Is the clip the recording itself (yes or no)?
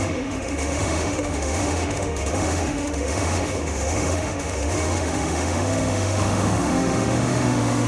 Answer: no